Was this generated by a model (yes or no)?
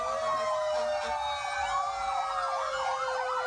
no